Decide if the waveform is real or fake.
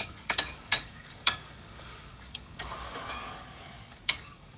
fake